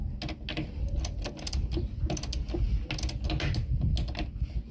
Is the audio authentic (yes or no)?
yes